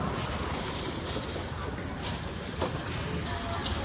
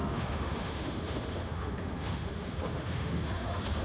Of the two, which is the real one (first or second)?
first